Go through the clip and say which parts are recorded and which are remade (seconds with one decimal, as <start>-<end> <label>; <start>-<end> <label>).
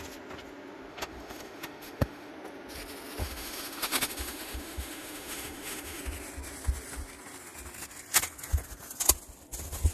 0.0-0.9 recorded; 0.9-2.3 remade; 2.3-3.2 recorded; 3.2-6.0 remade; 6.0-9.9 recorded